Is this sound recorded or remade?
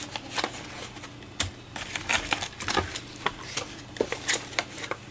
recorded